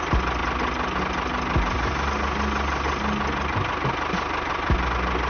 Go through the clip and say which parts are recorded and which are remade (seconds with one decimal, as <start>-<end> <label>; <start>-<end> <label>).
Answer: 0.0-5.3 recorded